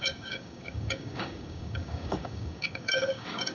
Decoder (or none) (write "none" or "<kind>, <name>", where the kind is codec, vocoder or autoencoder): codec, DAC